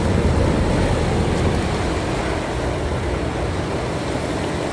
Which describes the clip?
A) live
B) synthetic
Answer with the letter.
A